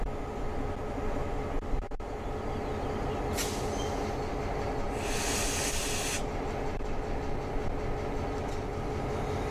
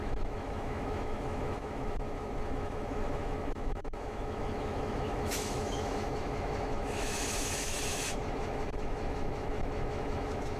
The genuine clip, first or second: first